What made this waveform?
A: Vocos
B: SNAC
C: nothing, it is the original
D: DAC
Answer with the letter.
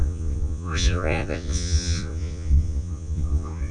A